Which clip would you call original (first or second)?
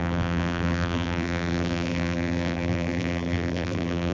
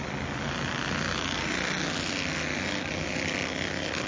second